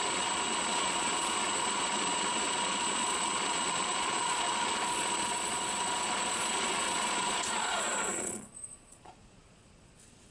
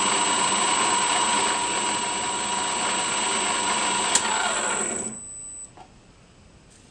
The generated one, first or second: first